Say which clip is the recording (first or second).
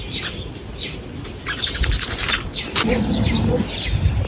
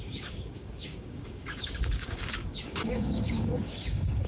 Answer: first